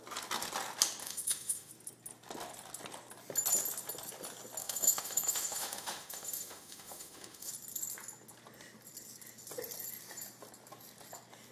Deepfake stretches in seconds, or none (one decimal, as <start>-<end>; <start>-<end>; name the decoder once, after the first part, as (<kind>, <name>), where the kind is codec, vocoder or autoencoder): 1.0-1.7 (autoencoder, DAC-VAE); 4.6-7.5